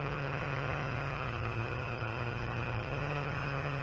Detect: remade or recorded remade